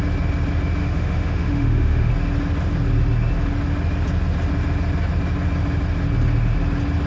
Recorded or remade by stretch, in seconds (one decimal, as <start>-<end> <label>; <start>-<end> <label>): 0.0-0.8 recorded; 0.8-2.1 remade; 2.1-7.1 recorded